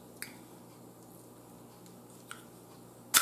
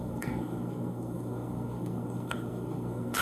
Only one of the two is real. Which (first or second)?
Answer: first